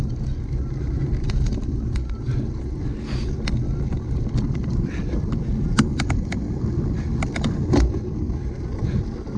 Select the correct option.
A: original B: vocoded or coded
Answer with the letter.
A